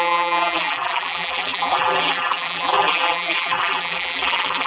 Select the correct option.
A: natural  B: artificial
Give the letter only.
B